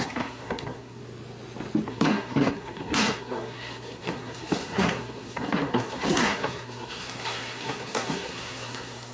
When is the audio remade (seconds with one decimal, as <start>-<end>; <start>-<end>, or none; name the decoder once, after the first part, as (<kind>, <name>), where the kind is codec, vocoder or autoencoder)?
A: 0.0-1.0 (codec, SNAC); 1.9-9.1